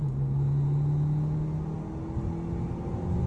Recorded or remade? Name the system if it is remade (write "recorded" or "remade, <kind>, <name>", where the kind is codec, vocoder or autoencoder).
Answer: recorded